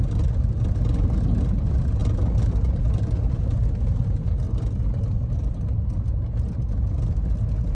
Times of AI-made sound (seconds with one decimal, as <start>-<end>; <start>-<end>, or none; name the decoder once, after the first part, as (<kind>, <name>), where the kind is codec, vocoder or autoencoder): none